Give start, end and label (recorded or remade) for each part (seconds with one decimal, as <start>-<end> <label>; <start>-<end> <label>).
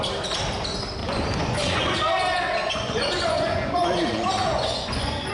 0.0-1.0 recorded; 1.0-2.0 remade; 2.0-2.6 recorded; 2.6-5.3 remade